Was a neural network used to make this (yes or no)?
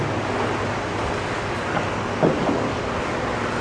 no